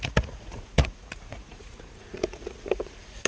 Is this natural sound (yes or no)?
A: no